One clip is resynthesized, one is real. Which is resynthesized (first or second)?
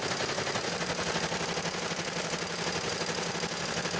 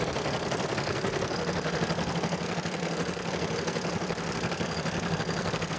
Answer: second